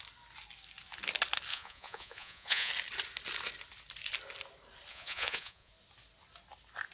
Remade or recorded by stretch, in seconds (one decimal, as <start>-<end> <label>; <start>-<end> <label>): 0.0-1.5 recorded; 1.5-2.7 remade; 2.7-4.9 recorded; 4.9-5.7 remade; 5.7-6.9 recorded